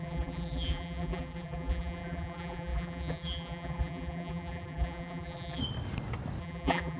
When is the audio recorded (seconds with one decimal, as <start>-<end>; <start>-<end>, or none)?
5.6-6.4